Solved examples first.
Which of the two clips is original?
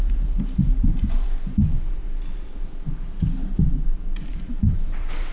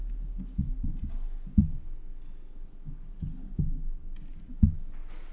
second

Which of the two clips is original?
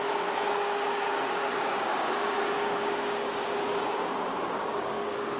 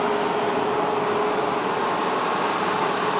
second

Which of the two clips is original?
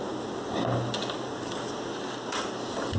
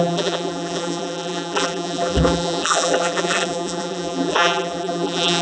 first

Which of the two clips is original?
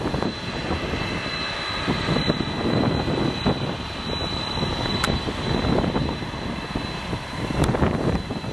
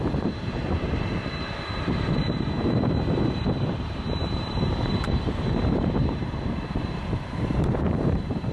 first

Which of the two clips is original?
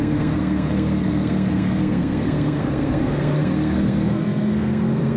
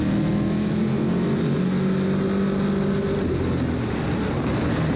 second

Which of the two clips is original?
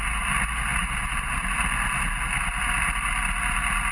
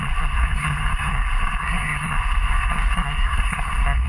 first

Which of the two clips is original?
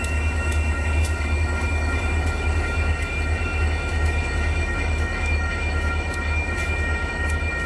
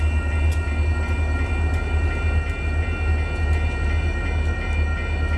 second